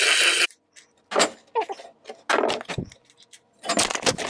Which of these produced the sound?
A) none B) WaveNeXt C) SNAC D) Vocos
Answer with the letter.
A